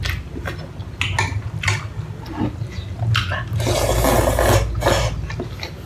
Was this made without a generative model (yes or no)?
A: yes